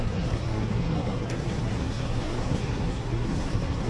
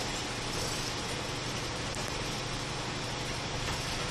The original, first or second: second